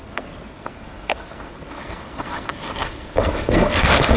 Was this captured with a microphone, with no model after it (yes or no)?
no